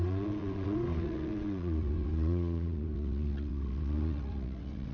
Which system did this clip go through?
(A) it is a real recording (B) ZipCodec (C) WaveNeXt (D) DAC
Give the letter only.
C